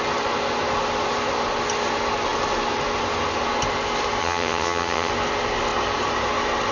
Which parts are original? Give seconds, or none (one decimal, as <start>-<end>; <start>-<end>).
0.0-4.2; 5.1-6.7